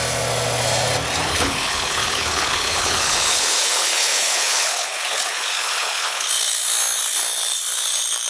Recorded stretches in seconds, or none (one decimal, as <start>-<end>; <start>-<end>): 0.0-1.3; 6.3-8.3